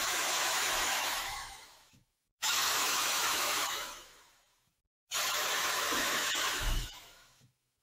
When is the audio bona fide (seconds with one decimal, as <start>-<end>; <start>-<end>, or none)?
none